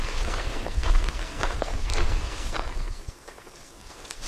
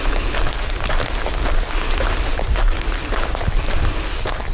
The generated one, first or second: first